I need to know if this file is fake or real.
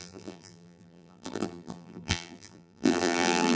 fake